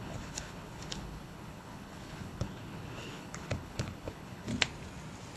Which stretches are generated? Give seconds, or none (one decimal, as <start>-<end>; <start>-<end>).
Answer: 0.0-4.5